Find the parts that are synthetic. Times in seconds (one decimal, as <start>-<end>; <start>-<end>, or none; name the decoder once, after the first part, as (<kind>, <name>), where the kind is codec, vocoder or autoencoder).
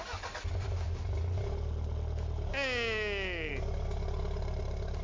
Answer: 2.5-3.5 (codec, DAC)